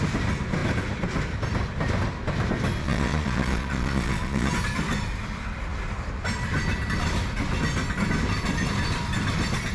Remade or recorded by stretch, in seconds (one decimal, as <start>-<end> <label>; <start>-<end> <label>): 0.0-2.8 recorded; 2.8-4.5 remade; 4.5-9.7 recorded